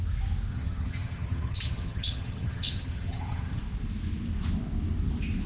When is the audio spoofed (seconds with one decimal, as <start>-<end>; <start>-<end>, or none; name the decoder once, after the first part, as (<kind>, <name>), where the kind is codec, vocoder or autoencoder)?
0.5-3.6 (vocoder, HiFi-GAN)